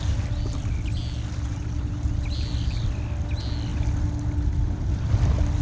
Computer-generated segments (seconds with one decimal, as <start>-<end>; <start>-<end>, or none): none